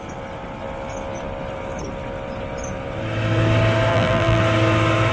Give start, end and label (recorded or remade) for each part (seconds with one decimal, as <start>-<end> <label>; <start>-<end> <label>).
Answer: 0.0-3.9 recorded; 3.9-4.4 remade; 4.4-5.1 recorded

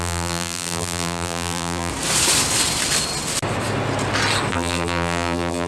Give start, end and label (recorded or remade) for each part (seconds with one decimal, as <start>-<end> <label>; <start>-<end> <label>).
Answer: 0.0-1.9 remade; 1.9-4.5 recorded; 4.5-5.7 remade